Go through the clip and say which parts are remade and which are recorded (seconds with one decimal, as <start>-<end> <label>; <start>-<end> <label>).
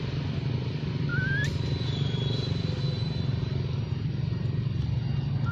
0.0-5.5 recorded